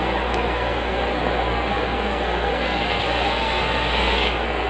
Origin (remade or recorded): remade